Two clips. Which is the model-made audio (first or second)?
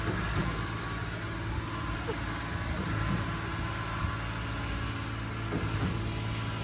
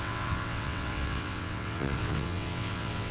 second